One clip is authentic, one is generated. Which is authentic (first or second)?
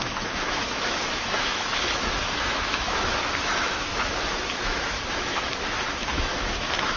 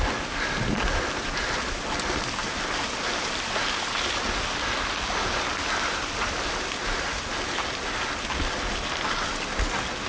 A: second